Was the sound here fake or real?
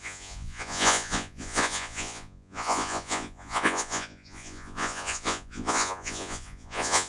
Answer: fake